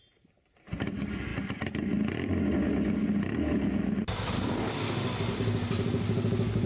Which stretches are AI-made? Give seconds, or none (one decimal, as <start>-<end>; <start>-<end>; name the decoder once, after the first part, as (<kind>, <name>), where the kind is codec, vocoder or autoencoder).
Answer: none